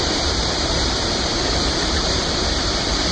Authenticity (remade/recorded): remade